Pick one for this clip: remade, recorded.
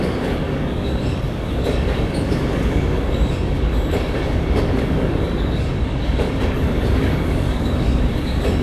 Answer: remade